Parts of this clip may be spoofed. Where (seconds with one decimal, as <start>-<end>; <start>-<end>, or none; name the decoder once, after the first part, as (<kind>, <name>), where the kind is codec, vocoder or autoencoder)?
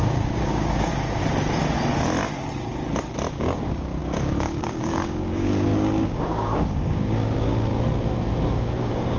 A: 0.0-0.9 (codec, DAC); 3.3-7.7; 8.5-9.2